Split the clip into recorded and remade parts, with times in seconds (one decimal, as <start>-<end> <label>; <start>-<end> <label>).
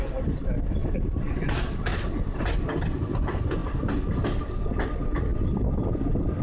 0.0-0.8 recorded; 0.8-2.6 remade; 2.6-3.6 recorded; 3.6-4.4 remade; 4.4-5.3 recorded; 5.3-6.4 remade